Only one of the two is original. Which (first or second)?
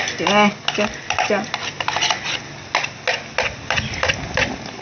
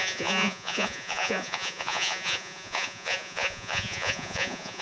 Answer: first